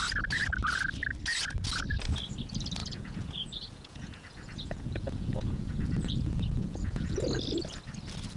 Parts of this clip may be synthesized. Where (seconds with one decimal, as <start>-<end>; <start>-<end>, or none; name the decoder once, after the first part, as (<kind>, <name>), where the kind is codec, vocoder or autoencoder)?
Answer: 2.8-7.2 (vocoder, Vocos)